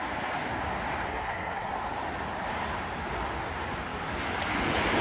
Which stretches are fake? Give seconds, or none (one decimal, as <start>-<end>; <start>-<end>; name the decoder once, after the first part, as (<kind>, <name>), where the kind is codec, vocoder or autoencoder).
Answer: 1.1-1.7 (codec, SNAC)